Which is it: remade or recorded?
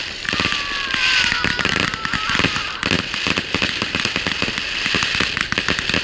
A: recorded